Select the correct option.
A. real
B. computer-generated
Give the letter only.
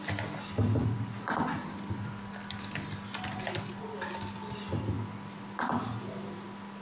A